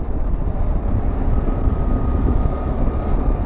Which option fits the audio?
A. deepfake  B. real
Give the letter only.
B